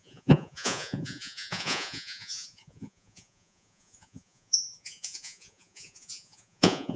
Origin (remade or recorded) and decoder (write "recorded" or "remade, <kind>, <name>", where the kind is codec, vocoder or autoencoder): remade, vocoder, Vocos